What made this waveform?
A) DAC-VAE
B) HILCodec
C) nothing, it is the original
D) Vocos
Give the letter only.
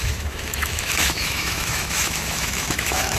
A